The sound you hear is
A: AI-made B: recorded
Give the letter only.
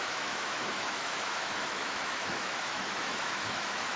A